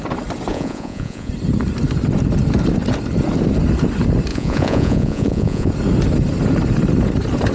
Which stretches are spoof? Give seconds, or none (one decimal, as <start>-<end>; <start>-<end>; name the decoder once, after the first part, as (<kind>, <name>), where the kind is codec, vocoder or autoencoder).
0.5-1.3 (vocoder, Vocos); 4.3-5.7

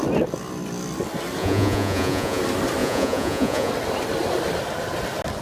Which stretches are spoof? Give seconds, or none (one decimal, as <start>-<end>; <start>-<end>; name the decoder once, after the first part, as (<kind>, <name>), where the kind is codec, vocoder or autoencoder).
1.4-2.4 (vocoder, Vocos); 2.8-3.7

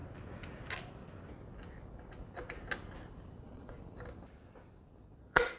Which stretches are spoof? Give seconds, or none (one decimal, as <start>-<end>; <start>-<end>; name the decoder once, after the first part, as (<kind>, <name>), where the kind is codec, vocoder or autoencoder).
3.4-3.8 (vocoder, Vocos); 5.0-5.6